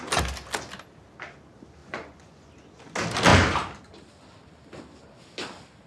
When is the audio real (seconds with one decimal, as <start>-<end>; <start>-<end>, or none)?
0.0-1.8; 2.5-5.9